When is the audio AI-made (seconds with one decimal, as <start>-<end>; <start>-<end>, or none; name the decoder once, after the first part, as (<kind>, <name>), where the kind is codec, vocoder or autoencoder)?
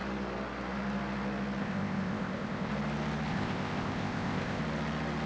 1.6-2.7 (codec, ZipCodec); 3.3-4.6